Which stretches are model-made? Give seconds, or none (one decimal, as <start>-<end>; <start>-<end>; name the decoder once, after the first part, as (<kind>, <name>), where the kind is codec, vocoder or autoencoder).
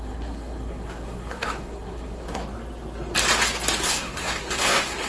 0.0-2.4 (codec, SNAC); 3.8-5.1